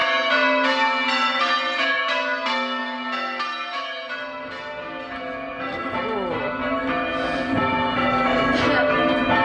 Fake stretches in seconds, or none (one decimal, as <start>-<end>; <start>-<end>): none